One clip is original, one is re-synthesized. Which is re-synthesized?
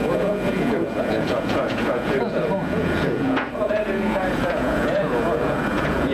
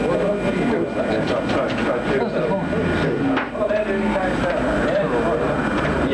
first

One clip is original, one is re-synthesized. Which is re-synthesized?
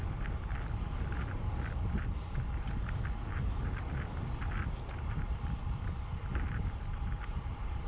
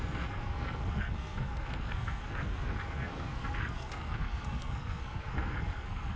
second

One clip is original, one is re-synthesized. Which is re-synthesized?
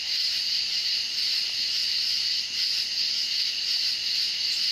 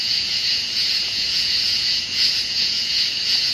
second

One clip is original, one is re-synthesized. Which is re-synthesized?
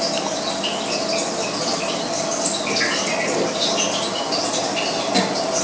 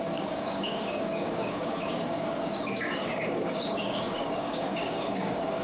second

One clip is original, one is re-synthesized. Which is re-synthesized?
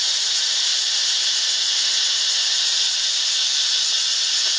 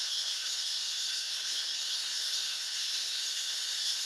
second